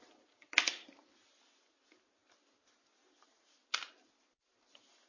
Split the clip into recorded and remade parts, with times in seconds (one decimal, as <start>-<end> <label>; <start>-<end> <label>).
0.0-5.1 recorded